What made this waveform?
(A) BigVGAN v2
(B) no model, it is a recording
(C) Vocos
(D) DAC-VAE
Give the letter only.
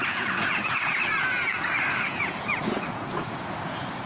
C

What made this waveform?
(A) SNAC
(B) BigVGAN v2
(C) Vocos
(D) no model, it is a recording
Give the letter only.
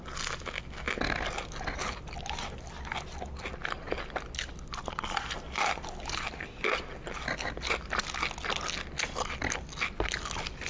D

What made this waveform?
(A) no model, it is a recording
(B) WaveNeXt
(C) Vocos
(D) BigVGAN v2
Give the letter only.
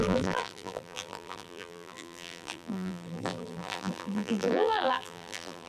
D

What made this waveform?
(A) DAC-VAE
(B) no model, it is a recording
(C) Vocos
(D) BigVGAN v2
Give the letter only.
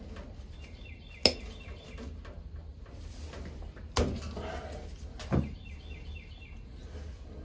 B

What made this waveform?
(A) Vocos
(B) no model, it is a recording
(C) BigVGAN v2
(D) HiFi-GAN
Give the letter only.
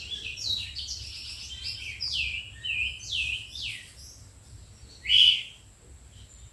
B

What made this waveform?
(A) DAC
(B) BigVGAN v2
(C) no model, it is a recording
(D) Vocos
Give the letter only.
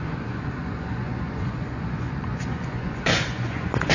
D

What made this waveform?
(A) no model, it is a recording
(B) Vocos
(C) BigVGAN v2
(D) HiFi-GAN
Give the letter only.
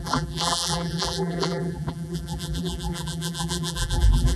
C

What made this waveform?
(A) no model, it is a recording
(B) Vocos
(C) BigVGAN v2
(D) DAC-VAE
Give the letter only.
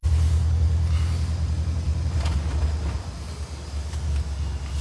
A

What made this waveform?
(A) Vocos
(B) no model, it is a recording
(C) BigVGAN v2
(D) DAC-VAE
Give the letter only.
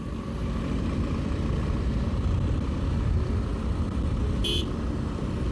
B